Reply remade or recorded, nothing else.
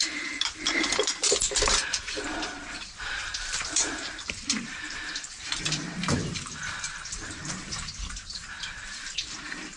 remade